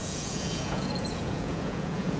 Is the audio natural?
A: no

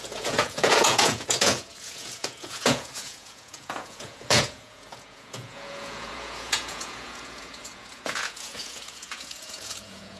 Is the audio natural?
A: no